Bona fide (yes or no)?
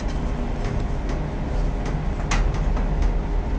yes